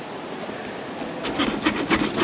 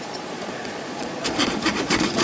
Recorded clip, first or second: first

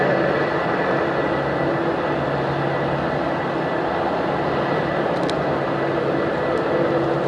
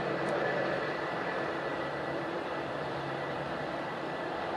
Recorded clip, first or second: first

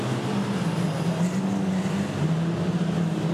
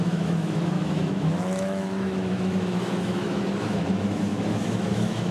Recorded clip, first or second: first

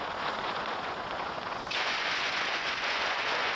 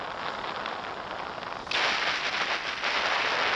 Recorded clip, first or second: second